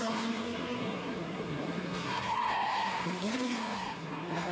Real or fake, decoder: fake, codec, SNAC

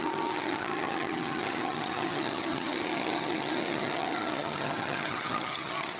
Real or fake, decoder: fake, vocoder, HiFi-GAN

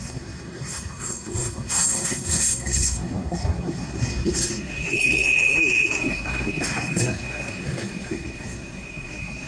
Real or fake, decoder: fake, codec, SNAC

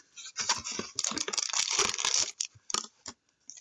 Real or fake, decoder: real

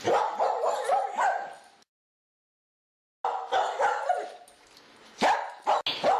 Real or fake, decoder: real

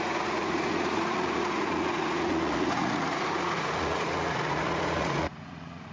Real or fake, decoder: fake, vocoder, Vocos